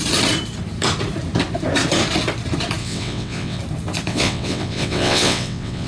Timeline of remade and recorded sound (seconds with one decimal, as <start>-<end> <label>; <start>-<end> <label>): 0.0-2.8 recorded; 2.8-3.6 remade; 3.6-4.1 recorded; 4.1-5.9 remade